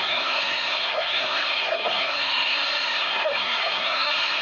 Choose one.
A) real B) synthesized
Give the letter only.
B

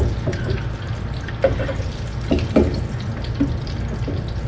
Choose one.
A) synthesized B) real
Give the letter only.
B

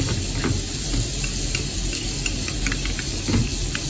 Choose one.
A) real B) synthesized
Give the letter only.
A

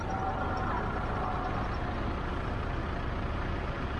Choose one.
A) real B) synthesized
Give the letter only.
A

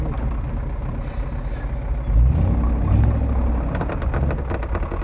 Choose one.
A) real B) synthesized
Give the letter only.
A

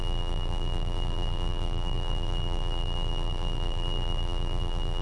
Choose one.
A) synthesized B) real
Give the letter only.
A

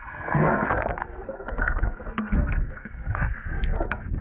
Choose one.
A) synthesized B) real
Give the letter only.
A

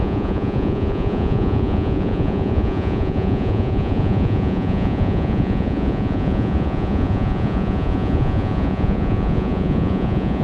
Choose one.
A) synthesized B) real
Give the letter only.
A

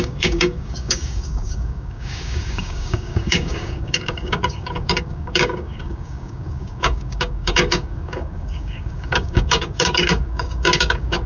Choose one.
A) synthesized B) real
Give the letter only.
A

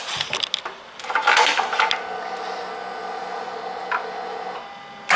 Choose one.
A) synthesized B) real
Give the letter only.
B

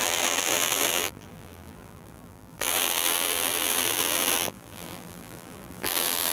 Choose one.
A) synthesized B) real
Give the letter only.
A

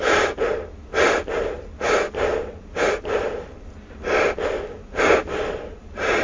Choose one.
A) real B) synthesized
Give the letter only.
A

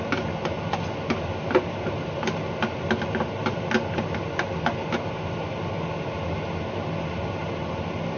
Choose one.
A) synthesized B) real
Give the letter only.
B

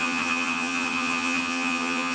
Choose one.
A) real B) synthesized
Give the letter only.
B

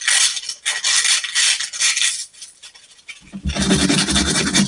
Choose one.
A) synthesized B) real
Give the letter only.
B